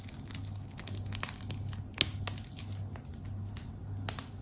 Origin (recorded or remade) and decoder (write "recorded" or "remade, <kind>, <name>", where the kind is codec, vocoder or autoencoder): recorded